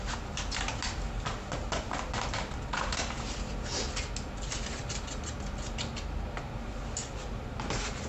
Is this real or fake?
real